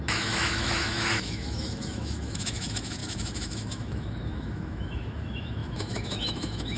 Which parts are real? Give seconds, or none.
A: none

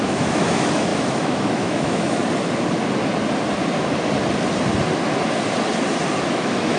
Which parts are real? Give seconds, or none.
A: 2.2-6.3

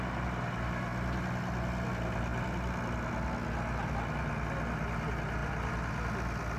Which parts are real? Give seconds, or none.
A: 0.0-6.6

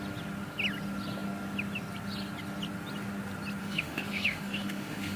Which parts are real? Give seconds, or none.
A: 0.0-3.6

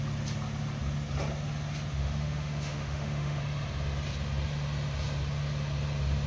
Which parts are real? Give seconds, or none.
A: 0.0-1.9; 3.4-6.3